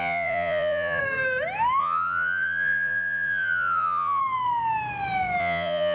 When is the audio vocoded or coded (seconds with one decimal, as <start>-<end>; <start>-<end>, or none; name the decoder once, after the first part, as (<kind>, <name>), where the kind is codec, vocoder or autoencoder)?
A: 0.0-1.0 (vocoder, Vocos); 1.8-4.2; 5.4-5.9